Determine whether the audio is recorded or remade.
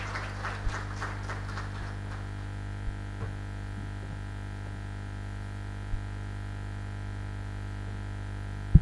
recorded